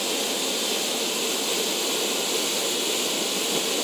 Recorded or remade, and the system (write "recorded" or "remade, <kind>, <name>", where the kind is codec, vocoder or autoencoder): recorded